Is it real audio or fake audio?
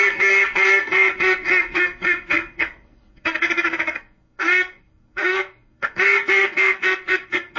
fake